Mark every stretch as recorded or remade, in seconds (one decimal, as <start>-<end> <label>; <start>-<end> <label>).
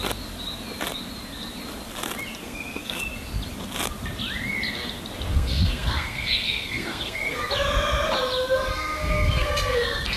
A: 0.0-2.4 recorded; 2.4-3.0 remade; 3.0-5.3 recorded; 5.3-7.5 remade; 7.5-8.7 recorded; 8.7-10.2 remade